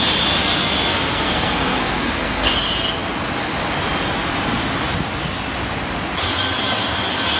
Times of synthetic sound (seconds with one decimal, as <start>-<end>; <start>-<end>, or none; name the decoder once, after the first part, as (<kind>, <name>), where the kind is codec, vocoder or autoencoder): 0.4-2.5 (codec, SNAC)